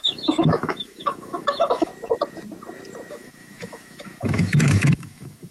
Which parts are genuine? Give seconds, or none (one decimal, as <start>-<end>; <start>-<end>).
1.9-3.1